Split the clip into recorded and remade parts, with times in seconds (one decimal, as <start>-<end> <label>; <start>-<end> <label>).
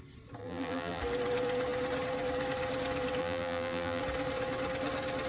0.0-0.4 recorded; 0.4-1.0 remade; 1.0-3.2 recorded; 3.2-4.0 remade; 4.0-5.3 recorded